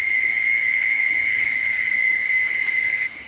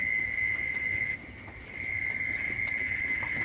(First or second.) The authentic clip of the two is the second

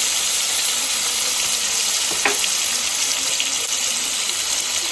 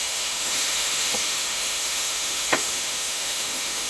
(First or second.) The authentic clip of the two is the first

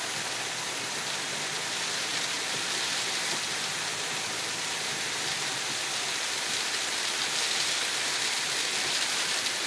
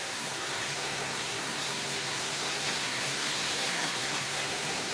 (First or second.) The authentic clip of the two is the first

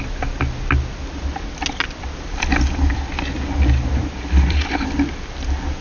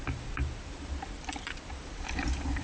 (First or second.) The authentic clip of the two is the first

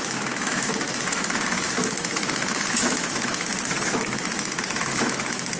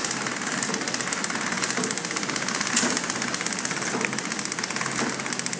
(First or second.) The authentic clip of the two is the second